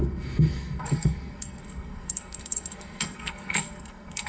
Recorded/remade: remade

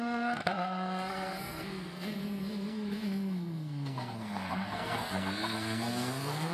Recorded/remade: remade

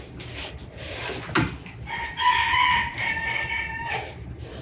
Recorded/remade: recorded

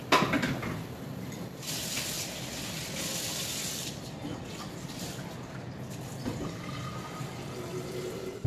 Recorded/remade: recorded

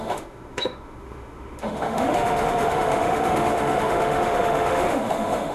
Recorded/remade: remade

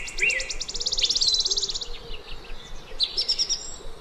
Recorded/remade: recorded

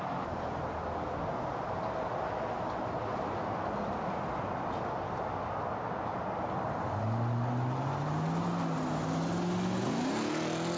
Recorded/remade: recorded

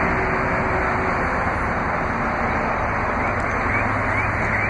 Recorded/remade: recorded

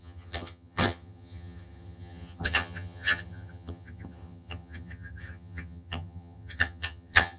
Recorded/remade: remade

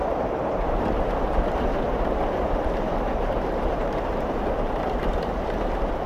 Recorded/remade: remade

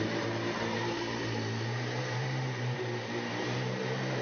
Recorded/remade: remade